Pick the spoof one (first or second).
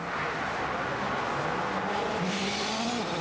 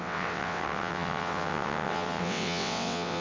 second